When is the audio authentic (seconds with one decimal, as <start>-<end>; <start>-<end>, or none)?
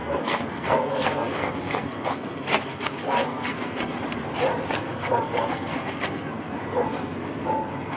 3.9-4.7